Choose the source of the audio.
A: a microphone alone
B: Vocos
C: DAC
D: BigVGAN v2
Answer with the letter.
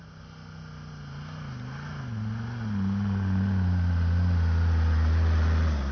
A